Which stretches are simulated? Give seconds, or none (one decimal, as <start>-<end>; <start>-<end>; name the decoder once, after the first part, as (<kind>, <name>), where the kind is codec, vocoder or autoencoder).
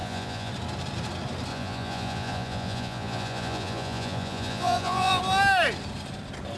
0.0-0.5 (vocoder, Vocos); 1.5-5.2